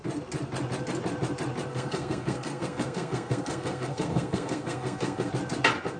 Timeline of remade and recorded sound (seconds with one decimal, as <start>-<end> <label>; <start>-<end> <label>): 0.0-1.7 recorded; 1.7-5.3 remade; 5.3-6.0 recorded